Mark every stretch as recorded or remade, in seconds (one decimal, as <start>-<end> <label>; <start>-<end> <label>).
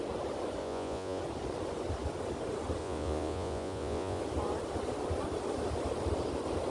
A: 0.0-0.6 recorded; 0.6-1.2 remade; 1.2-2.8 recorded; 2.8-4.2 remade; 4.2-6.7 recorded